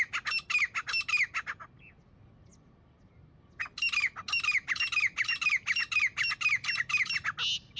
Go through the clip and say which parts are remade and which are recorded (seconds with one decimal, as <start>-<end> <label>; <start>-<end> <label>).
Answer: 0.0-7.8 recorded